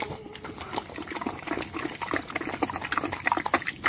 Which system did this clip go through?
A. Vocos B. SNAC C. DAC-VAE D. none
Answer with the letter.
D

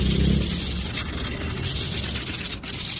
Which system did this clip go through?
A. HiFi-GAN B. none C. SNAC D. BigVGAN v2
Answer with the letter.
B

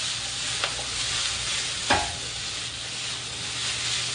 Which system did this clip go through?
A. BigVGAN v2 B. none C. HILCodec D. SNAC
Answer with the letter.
B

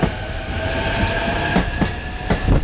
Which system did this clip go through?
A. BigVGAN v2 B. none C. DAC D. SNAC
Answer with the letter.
B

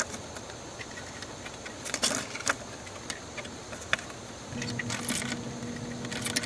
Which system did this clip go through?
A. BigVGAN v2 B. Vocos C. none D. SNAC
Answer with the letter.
C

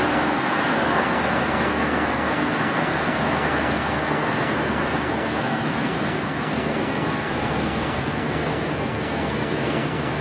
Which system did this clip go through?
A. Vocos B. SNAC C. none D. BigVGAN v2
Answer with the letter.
B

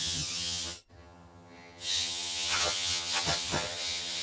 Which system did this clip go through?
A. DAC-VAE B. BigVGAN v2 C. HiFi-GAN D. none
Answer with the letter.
C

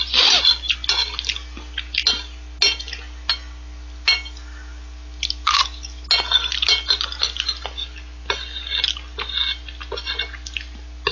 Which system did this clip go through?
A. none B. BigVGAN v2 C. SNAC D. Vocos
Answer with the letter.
A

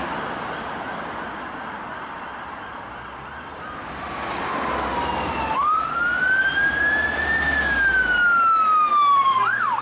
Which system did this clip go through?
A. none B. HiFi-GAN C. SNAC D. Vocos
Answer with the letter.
A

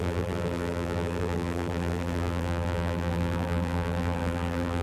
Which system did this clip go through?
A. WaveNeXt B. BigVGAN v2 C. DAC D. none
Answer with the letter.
B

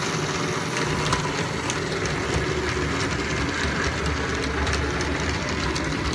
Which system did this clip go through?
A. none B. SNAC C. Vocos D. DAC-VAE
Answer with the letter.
A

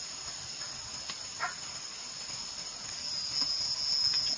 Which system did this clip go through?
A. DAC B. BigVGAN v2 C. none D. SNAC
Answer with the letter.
C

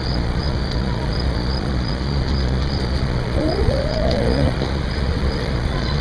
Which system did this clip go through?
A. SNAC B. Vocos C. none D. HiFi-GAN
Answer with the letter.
B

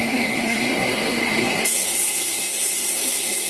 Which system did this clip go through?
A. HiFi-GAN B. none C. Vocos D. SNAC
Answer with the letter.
D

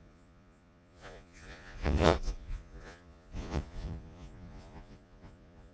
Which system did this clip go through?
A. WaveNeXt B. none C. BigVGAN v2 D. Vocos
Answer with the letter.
D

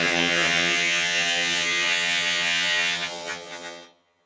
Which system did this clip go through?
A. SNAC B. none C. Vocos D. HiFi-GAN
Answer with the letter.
D